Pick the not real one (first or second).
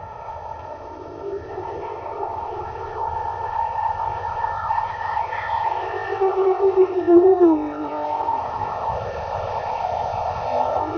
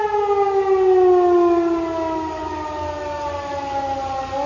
first